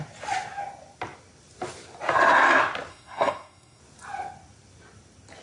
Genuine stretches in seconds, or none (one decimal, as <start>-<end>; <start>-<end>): 0.0-2.9; 3.8-5.4